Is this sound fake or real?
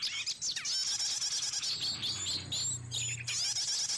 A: real